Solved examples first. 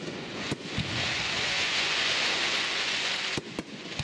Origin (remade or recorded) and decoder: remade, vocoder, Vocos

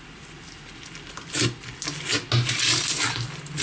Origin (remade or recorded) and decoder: recorded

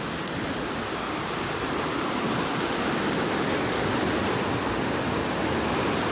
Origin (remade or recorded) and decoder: recorded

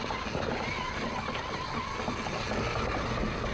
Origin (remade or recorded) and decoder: recorded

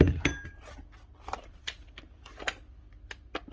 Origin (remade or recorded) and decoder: recorded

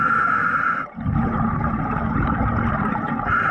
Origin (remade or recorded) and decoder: recorded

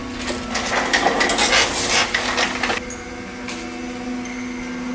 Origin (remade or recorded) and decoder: recorded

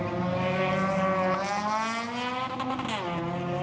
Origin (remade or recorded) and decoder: recorded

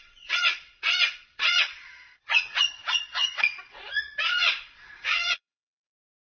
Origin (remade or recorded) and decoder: remade, vocoder, Vocos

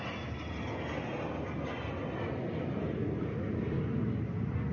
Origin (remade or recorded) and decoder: recorded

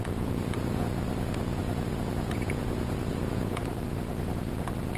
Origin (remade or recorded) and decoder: remade, vocoder, Vocos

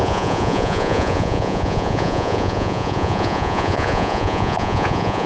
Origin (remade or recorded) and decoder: remade, vocoder, Vocos